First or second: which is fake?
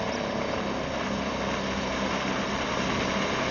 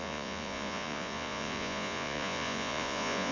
second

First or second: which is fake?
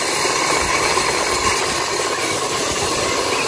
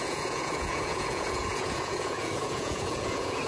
second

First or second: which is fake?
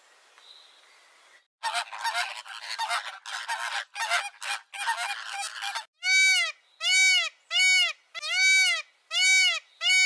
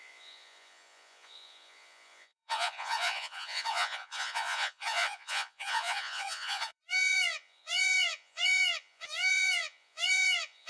second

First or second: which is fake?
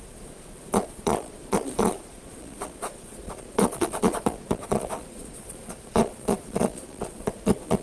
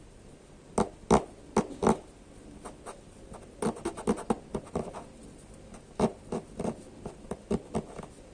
first